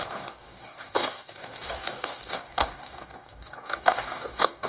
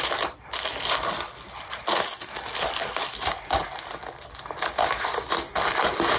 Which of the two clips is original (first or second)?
second